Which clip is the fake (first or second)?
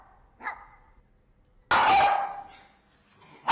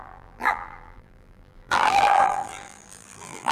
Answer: second